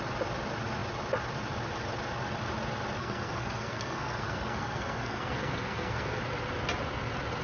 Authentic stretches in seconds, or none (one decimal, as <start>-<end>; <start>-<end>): 0.0-3.0; 6.2-7.4